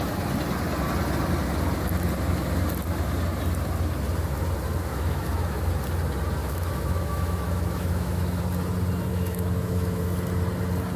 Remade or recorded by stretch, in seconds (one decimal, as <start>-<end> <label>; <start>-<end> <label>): 0.0-4.9 recorded; 4.9-5.7 remade; 5.7-6.4 recorded; 6.4-8.4 remade; 8.4-9.1 recorded; 9.1-10.0 remade; 10.0-11.0 recorded